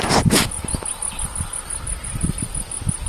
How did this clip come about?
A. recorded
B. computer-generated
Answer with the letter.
A